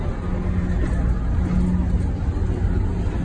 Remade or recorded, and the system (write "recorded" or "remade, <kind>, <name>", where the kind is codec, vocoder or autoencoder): recorded